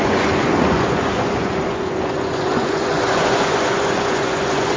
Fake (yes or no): yes